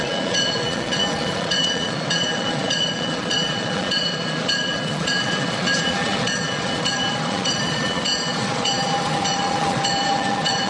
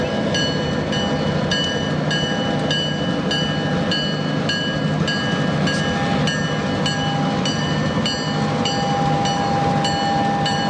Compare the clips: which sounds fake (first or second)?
first